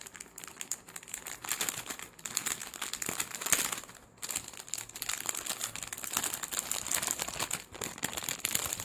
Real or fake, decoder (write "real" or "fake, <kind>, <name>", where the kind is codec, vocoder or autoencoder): real